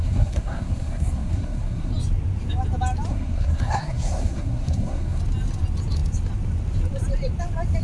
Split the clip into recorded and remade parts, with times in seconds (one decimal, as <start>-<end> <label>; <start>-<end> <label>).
0.0-1.9 remade; 1.9-3.1 recorded; 3.1-5.2 remade; 5.2-7.8 recorded